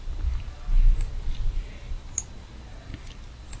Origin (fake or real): real